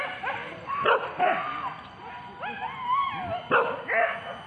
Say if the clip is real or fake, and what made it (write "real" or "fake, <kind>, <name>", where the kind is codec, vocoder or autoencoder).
real